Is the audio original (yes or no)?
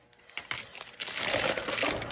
yes